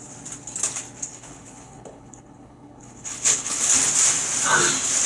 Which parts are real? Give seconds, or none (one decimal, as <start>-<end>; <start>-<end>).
0.0-1.1; 3.7-5.1